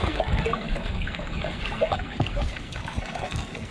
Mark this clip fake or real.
fake